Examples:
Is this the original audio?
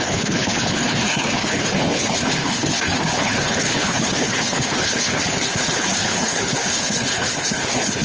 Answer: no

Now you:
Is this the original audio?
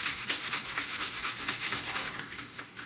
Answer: no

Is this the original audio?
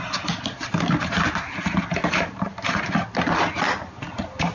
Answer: yes